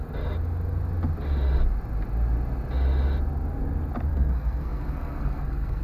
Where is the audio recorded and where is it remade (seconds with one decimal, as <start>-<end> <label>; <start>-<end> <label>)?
0.0-4.1 recorded; 4.1-5.8 remade